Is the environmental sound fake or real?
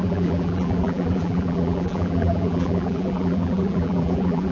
fake